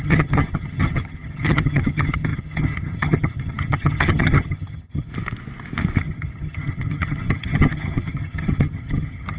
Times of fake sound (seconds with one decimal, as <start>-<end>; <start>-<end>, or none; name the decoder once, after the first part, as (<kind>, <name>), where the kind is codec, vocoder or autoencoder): 0.0-5.1 (vocoder, HiFi-GAN); 6.0-9.4